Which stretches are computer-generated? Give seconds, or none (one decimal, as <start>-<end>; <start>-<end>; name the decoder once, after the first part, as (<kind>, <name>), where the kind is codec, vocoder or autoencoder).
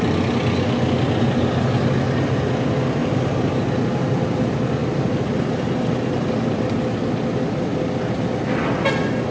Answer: 3.0-3.5 (vocoder, BigVGAN v2); 4.8-6.8